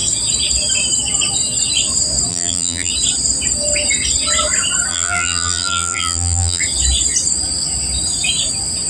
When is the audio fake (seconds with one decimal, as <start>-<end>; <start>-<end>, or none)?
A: 2.3-2.9; 4.9-6.6